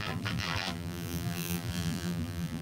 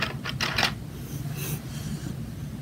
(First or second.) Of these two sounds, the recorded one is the second